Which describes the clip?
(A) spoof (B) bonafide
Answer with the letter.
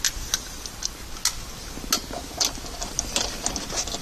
B